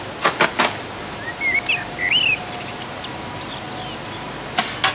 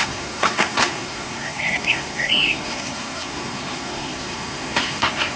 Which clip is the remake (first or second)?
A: second